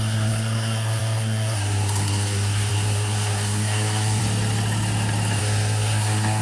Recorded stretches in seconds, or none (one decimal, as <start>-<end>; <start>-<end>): 4.2-5.4